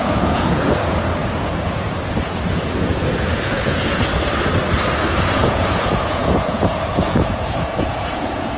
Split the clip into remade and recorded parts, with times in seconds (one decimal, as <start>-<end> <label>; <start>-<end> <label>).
0.0-4.1 remade; 4.1-5.1 recorded; 5.1-8.6 remade